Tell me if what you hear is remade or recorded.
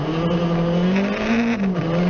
recorded